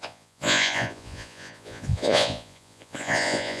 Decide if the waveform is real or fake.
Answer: fake